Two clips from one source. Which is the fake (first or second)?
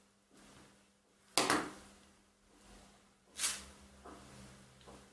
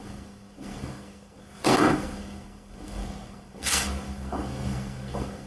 second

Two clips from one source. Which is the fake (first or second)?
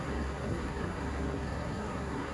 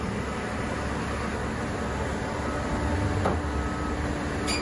first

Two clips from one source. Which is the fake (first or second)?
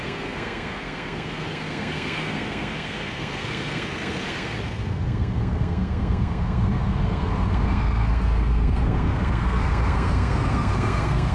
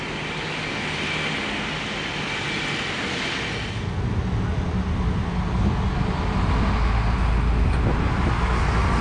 first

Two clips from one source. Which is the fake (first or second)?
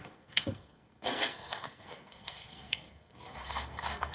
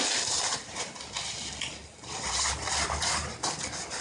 first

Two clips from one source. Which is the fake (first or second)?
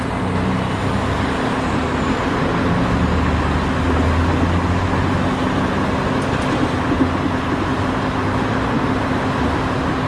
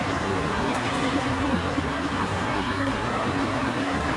second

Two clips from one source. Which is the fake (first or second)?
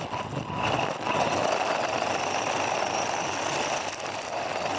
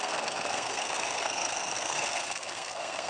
second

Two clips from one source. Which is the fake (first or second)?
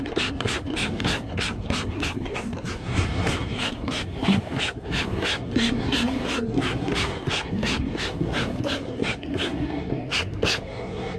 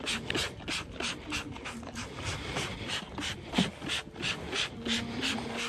first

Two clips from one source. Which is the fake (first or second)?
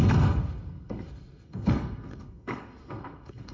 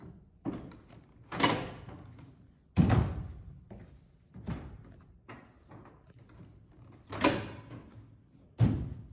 first